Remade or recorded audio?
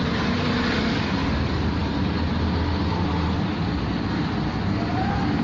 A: recorded